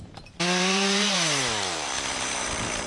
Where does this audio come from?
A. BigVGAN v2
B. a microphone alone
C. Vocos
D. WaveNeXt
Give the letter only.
A